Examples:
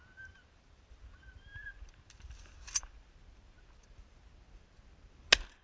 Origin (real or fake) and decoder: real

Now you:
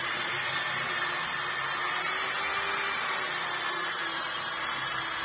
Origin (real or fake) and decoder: real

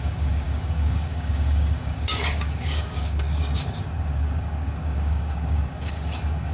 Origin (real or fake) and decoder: fake, codec, DAC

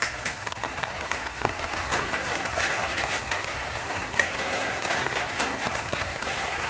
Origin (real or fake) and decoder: fake, codec, SNAC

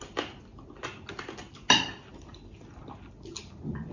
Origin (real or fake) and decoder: real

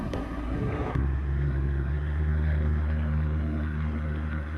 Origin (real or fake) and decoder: fake, codec, SNAC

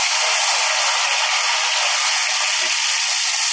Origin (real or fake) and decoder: real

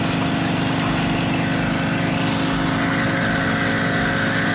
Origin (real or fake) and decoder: real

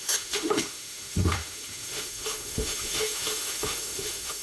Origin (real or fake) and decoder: fake, autoencoder, DAC-VAE